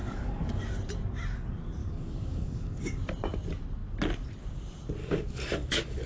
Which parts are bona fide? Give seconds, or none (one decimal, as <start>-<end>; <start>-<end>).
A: 0.6-1.8; 3.0-5.0